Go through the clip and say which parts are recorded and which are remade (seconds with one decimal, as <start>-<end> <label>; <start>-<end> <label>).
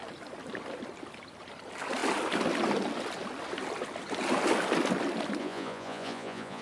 0.0-5.4 recorded; 5.4-6.6 remade